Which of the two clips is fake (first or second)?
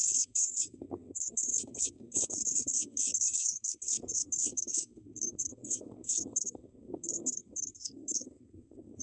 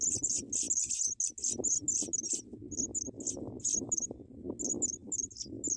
first